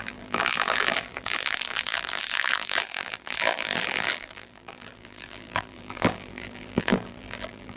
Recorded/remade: remade